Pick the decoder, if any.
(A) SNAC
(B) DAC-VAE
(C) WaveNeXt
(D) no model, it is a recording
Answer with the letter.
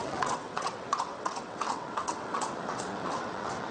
C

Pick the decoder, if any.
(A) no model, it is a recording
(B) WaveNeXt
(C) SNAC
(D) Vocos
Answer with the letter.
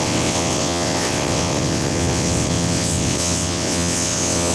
B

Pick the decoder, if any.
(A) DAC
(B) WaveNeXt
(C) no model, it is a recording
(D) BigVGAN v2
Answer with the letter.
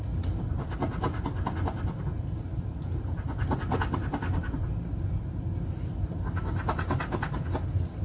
C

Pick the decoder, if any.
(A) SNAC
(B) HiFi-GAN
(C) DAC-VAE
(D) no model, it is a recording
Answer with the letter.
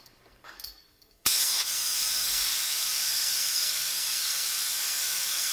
A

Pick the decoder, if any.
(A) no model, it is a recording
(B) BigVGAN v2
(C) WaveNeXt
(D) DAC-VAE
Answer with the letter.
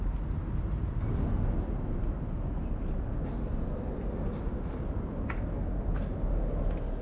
A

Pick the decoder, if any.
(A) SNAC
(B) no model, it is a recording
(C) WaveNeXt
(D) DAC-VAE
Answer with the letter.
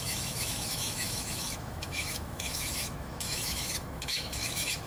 D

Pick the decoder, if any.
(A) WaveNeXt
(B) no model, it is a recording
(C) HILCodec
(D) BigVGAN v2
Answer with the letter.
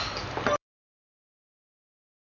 B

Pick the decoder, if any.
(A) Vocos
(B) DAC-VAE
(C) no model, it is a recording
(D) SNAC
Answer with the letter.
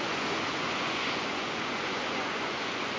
A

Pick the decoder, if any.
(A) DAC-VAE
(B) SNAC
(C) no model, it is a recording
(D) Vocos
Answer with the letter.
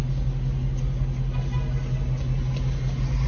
C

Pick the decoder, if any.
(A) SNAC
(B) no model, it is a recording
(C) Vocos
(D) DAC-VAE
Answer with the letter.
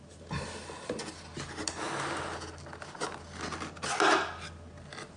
B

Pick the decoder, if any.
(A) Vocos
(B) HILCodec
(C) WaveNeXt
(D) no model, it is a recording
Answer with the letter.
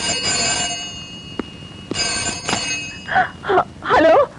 D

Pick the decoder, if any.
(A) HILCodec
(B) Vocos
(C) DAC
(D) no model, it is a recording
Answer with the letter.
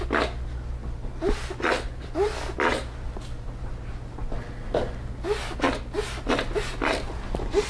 D